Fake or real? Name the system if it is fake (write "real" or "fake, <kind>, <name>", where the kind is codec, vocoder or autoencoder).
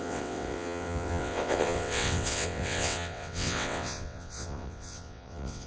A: fake, vocoder, WaveNeXt